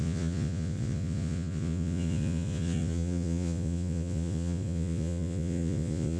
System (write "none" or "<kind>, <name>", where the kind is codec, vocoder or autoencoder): vocoder, Vocos